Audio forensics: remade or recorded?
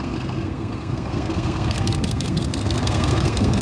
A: remade